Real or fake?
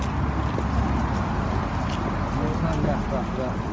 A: real